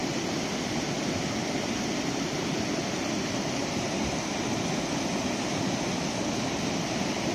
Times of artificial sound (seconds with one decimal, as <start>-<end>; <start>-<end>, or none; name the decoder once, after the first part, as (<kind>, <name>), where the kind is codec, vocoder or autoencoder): none